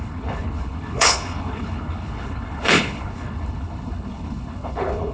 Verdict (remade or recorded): remade